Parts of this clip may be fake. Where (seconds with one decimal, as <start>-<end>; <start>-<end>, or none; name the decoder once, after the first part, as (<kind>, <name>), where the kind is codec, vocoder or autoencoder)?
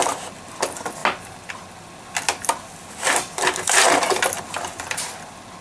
none